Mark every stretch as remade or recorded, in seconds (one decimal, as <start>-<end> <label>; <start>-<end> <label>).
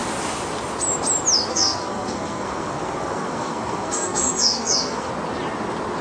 0.0-1.5 recorded; 1.5-5.1 remade; 5.1-6.0 recorded